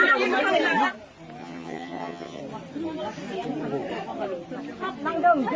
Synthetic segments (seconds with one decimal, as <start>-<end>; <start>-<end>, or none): 1.4-2.4